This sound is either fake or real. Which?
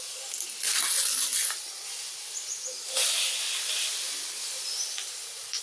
real